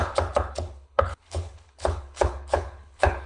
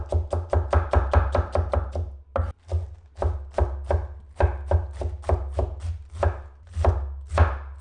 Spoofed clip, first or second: first